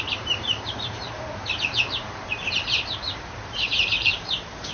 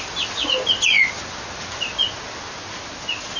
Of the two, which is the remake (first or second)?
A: first